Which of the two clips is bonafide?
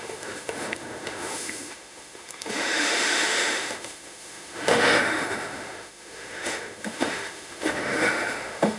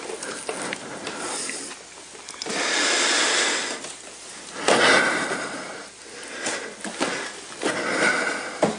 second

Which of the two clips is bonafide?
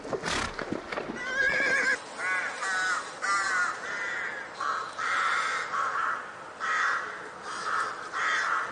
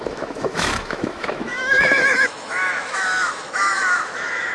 first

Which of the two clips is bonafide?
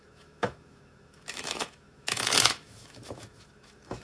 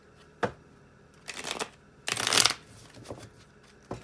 second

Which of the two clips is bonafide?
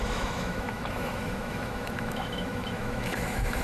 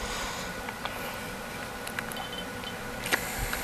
second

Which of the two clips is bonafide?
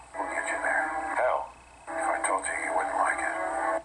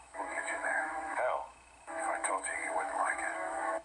first